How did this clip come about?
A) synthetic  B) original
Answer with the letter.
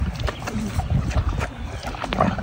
B